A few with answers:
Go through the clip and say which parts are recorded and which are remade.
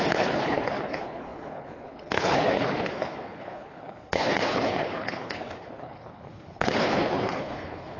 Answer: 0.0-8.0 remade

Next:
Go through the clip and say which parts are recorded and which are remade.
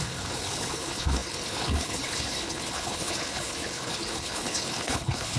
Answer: 0.0-5.4 remade